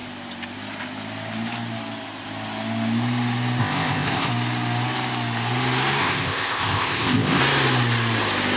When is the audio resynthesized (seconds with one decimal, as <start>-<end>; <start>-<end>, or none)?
3.6-4.3; 6.0-7.4